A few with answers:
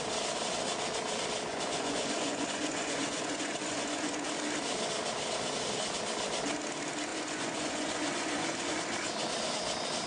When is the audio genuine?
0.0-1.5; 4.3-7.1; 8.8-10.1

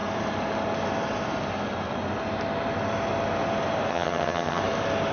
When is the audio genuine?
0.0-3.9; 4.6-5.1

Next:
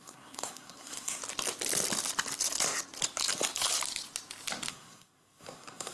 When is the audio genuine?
1.2-4.7

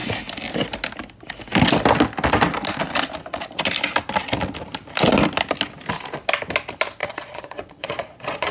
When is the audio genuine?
0.0-7.0

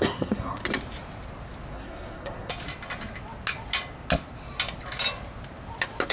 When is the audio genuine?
0.6-1.7; 2.5-6.1